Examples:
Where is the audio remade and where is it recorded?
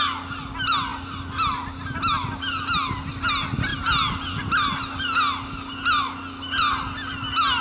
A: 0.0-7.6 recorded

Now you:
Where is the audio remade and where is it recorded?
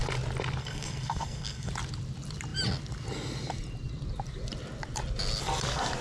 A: 0.0-0.6 recorded; 0.6-1.7 remade; 1.7-6.0 recorded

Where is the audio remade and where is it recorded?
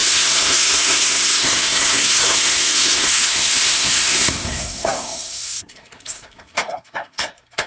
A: 0.0-7.7 remade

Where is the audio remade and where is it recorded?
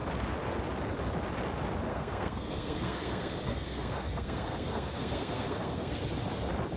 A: 0.0-1.9 recorded; 1.9-6.0 remade; 6.0-6.8 recorded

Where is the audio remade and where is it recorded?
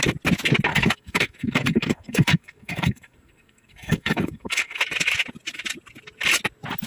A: 0.0-0.7 recorded; 0.7-4.8 remade; 4.8-6.9 recorded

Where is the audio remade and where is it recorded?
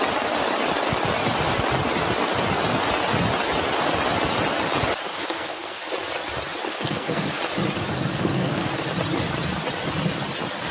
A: 0.0-5.1 recorded; 5.1-5.8 remade; 5.8-6.6 recorded; 6.6-7.4 remade; 7.4-8.1 recorded; 8.1-8.7 remade; 8.7-10.7 recorded